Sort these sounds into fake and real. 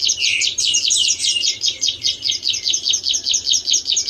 real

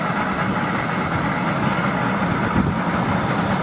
real